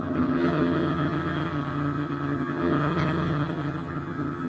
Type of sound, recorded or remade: remade